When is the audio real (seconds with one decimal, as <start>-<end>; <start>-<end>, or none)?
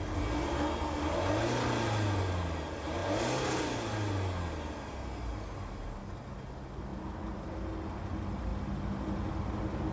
0.0-9.9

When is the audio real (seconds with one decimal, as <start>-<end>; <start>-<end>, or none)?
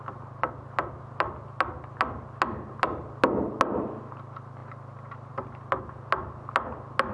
0.0-7.1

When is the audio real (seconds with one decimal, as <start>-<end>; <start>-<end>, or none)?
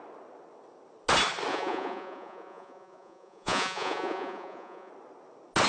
0.0-1.5; 4.9-5.7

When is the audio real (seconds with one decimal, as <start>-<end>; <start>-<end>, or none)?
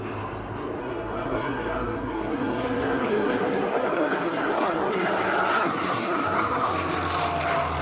0.0-0.8; 5.1-5.5; 6.7-7.8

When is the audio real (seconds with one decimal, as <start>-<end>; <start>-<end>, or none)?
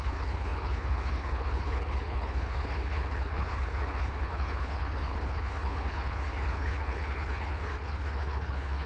none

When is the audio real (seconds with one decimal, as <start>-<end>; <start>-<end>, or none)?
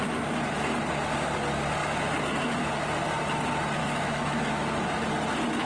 0.0-3.8; 4.7-5.7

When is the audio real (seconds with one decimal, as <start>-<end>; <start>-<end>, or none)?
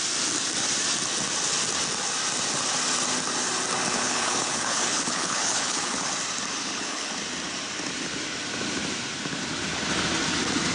0.0-3.9; 6.1-6.6; 7.1-10.7